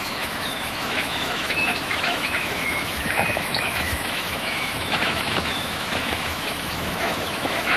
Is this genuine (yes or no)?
no